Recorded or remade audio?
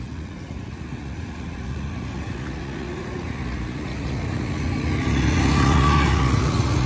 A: remade